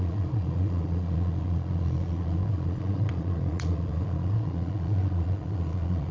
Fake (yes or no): yes